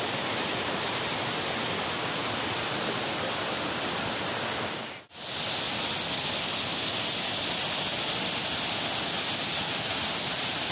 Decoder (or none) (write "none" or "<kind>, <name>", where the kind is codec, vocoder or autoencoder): none